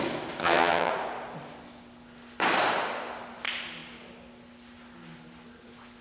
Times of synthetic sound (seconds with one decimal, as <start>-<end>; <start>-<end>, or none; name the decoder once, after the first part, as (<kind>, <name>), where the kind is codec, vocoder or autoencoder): 0.4-0.9 (vocoder, HiFi-GAN)